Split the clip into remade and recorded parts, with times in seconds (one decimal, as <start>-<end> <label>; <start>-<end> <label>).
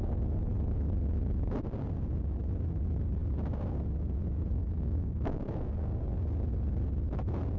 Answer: 0.0-4.5 recorded; 4.5-6.0 remade; 6.0-7.6 recorded